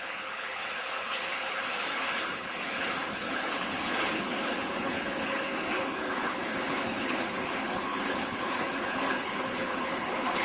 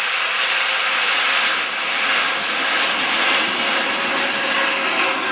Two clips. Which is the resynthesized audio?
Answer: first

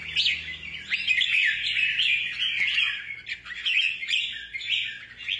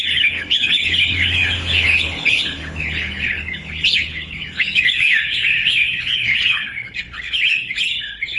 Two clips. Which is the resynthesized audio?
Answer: second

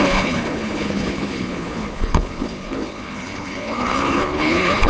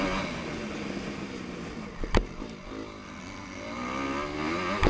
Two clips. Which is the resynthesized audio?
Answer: first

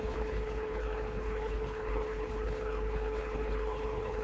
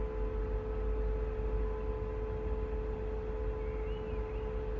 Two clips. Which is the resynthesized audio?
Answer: first